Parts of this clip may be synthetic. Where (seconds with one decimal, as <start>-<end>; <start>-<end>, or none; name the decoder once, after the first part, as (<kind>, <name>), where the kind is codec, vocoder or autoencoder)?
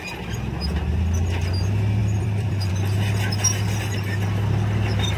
2.0-2.7 (vocoder, BigVGAN v2)